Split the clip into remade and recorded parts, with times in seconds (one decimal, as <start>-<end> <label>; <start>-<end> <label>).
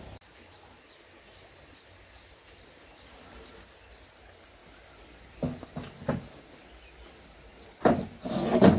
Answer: 0.0-8.8 recorded